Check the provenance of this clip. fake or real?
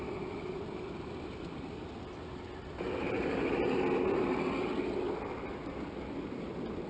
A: real